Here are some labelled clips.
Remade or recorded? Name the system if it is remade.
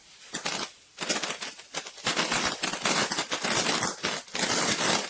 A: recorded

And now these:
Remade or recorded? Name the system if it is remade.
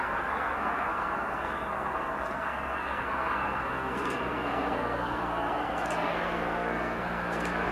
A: remade, codec, SNAC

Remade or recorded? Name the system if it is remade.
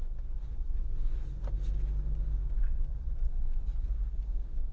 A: recorded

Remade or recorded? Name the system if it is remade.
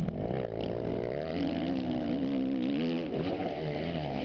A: recorded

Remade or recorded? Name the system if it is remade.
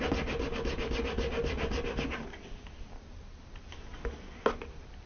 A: recorded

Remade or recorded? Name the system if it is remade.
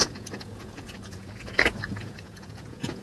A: remade, vocoder, Vocos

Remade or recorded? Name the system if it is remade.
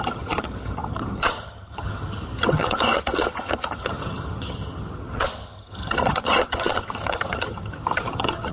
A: remade, vocoder, HiFi-GAN